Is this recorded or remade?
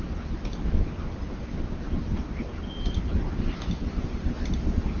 recorded